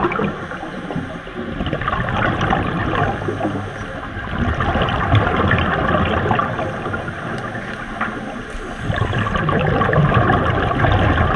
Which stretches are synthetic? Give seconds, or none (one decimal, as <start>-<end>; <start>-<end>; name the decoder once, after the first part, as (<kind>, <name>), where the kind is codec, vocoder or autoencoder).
6.4-7.4 (vocoder, BigVGAN v2)